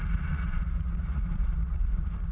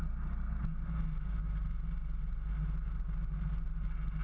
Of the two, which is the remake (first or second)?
first